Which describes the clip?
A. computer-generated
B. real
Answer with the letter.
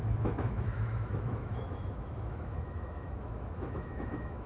A